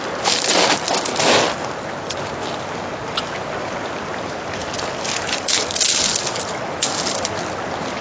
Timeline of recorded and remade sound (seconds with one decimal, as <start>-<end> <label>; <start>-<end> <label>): 0.0-4.6 recorded; 4.6-5.9 remade; 5.9-8.0 recorded